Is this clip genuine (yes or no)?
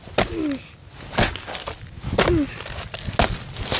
yes